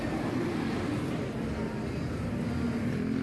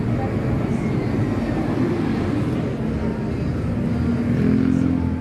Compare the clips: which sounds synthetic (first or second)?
first